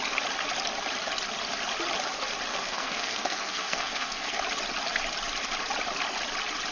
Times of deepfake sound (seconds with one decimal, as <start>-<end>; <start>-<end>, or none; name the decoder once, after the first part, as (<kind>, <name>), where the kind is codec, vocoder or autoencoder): 2.5-4.4 (codec, SNAC)